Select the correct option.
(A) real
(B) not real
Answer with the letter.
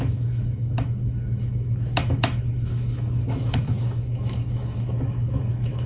B